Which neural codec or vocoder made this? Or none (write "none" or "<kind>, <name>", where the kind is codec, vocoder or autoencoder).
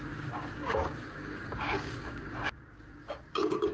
codec, DAC